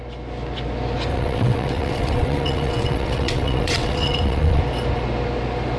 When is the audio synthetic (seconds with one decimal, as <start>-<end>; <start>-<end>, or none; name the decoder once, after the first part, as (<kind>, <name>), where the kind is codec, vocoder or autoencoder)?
1.1-4.6 (vocoder, WaveNeXt)